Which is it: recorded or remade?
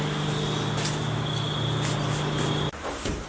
recorded